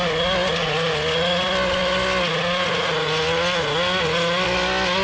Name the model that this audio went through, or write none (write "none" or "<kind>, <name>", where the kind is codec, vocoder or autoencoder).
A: none